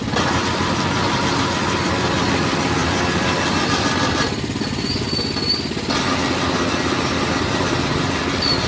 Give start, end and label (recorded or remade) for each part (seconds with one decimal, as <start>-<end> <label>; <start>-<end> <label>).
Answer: 0.0-8.7 recorded